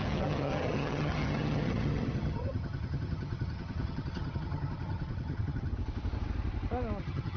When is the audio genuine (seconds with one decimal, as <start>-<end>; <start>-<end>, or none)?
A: 5.7-7.0